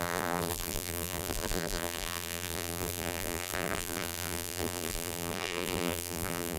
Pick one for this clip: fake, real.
fake